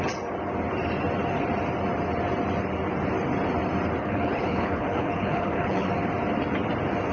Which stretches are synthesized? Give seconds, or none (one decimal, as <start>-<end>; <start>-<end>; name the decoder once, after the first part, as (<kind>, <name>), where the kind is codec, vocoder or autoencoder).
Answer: 4.0-5.9 (codec, HILCodec)